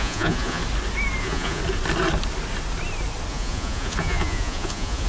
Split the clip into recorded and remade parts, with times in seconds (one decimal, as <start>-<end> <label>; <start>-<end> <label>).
0.0-0.6 remade; 0.6-1.2 recorded; 1.2-1.6 remade; 1.6-3.3 recorded; 3.3-5.1 remade